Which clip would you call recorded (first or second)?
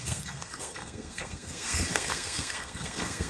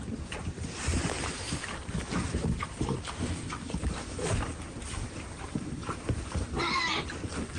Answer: second